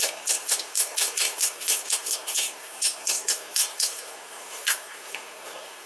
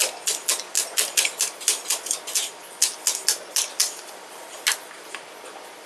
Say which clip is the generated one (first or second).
first